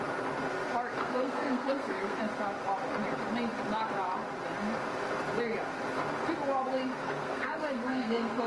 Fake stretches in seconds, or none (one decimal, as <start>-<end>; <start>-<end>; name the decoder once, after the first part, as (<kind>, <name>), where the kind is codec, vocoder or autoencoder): 1.0-2.2 (codec, SNAC); 6.9-8.5